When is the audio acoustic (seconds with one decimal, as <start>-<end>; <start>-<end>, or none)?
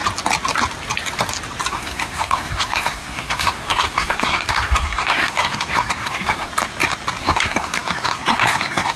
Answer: 0.0-1.7; 6.5-7.2